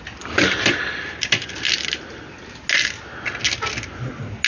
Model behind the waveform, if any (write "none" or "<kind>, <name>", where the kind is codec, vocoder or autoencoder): none